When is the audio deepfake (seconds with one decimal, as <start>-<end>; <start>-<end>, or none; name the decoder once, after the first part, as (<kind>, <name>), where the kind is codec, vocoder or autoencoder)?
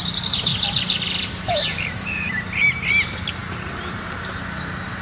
0.0-0.5 (vocoder, BigVGAN v2); 1.3-5.0